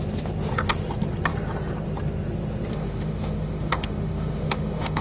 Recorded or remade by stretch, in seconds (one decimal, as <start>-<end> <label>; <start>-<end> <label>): 0.0-2.7 recorded; 2.7-5.0 remade